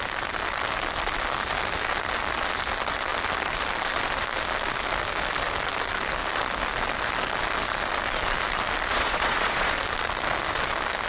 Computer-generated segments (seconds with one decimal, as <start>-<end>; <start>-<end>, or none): 8.9-9.7